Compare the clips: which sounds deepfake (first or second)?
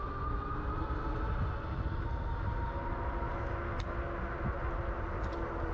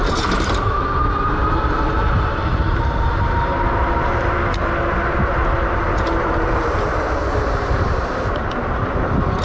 second